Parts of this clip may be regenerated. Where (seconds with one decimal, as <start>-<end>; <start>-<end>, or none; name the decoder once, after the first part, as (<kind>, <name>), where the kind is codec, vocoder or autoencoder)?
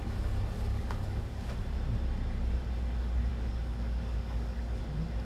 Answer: 0.7-1.5 (codec, DAC); 3.3-4.8